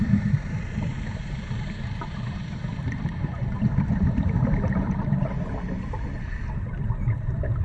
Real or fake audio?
fake